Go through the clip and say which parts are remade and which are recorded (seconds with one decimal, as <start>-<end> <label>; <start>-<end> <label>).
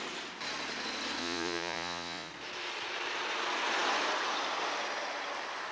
0.0-1.2 recorded; 1.2-2.3 remade; 2.3-5.7 recorded